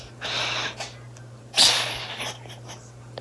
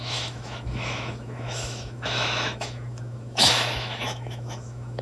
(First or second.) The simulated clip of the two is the second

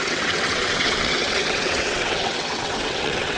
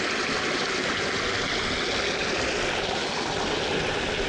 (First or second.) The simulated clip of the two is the first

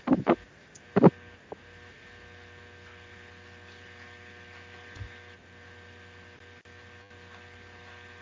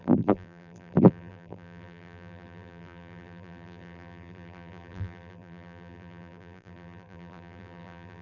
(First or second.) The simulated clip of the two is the second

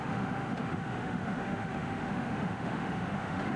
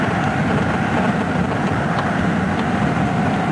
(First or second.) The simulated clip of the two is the first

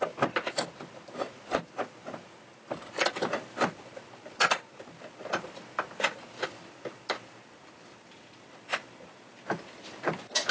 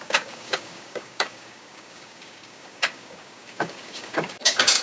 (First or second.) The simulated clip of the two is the second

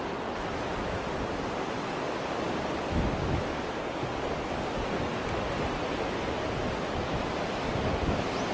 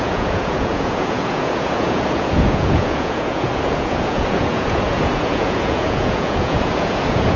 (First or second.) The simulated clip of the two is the second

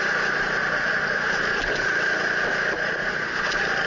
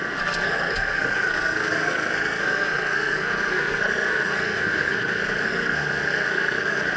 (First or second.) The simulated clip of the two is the second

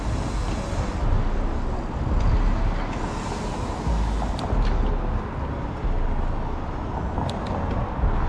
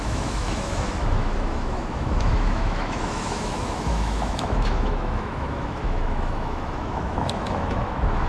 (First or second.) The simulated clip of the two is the second